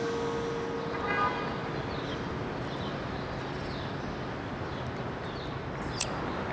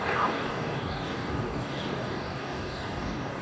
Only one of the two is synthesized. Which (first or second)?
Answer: second